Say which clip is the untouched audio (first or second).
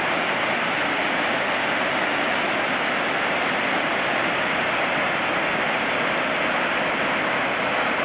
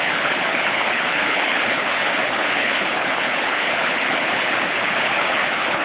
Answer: first